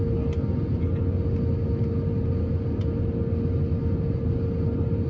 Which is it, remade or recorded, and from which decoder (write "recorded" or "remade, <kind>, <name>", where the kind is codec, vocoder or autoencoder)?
recorded